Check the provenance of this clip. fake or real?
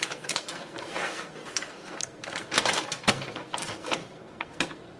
fake